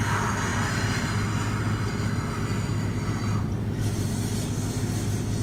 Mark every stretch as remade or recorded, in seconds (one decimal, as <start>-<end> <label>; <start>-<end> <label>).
0.0-5.4 recorded